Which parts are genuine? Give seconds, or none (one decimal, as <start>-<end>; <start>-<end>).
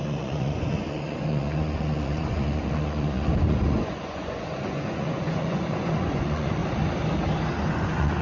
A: 6.6-7.7